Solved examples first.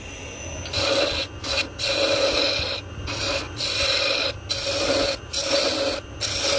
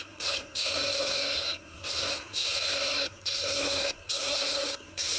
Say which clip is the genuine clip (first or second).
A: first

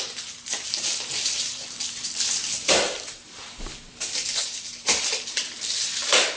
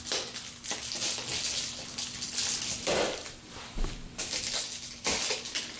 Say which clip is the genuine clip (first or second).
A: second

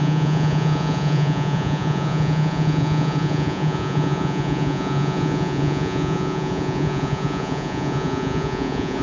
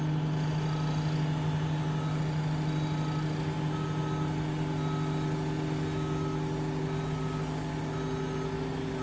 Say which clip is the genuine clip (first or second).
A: second